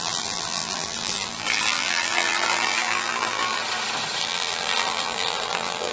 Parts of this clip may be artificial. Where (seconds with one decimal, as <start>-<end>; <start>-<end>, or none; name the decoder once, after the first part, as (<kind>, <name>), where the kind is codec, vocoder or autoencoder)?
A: 0.0-3.6 (vocoder, BigVGAN v2); 4.2-5.9